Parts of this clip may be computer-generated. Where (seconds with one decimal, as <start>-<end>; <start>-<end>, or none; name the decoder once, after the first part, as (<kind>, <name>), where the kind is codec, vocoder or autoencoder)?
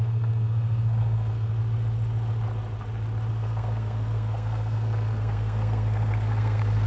0.0-1.5 (codec, SNAC); 3.3-6.9